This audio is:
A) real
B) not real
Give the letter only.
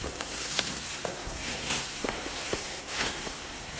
B